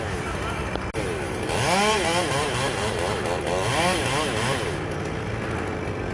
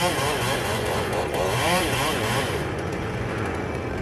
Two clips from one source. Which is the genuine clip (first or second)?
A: first